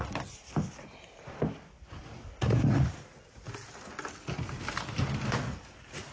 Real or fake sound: real